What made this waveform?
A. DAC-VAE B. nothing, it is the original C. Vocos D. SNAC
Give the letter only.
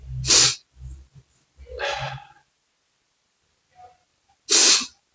B